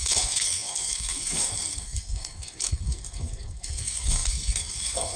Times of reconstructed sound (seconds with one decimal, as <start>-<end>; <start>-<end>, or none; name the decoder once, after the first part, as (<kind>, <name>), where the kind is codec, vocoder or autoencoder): 0.0-5.2 (codec, SNAC)